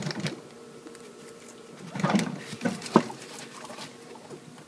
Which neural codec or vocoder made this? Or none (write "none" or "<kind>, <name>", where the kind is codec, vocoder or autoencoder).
vocoder, BigVGAN v2